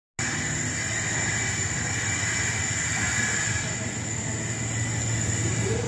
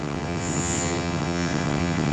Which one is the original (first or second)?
first